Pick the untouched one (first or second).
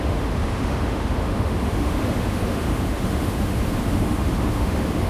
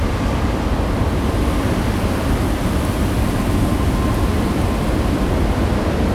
second